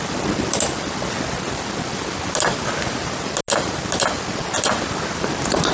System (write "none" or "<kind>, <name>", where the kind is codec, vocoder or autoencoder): none